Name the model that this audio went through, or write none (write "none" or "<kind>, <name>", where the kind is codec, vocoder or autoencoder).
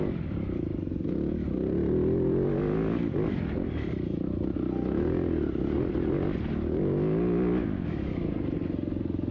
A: none